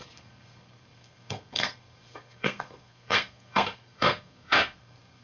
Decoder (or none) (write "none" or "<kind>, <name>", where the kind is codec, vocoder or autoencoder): codec, SNAC